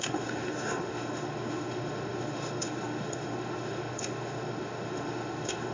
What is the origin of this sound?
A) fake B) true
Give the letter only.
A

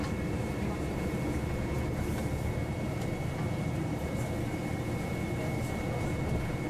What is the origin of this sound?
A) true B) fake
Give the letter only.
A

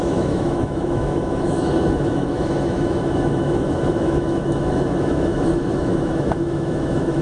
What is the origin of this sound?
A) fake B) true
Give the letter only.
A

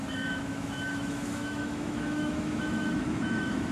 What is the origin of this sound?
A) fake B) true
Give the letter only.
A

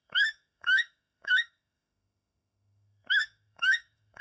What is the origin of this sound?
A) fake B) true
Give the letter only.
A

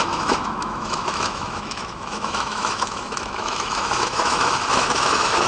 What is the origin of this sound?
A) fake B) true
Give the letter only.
A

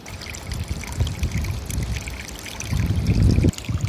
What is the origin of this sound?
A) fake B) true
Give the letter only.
B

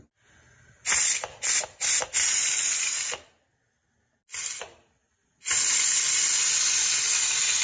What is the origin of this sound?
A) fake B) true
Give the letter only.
B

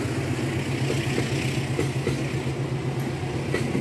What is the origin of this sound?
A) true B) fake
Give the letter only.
A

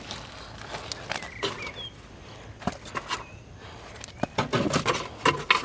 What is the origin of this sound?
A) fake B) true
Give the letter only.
B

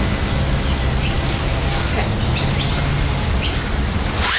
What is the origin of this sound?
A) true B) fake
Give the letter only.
A